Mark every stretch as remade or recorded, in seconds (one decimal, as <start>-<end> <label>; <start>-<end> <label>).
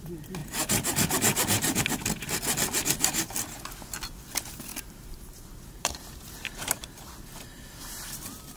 0.0-0.4 recorded; 0.4-1.8 remade; 1.8-4.7 recorded; 4.7-7.1 remade; 7.1-8.6 recorded